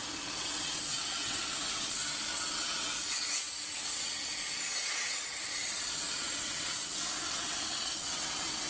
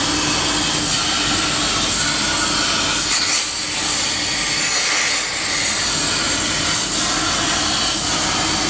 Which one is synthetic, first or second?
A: first